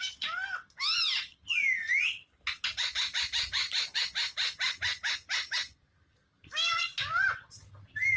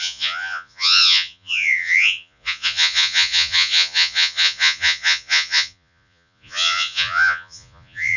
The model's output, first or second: second